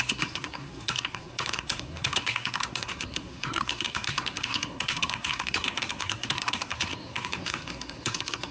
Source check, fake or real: fake